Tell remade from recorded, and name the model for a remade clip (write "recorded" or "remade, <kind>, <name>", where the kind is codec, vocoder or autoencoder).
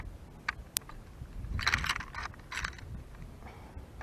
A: recorded